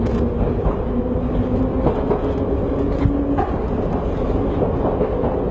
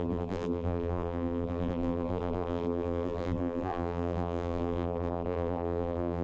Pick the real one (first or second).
first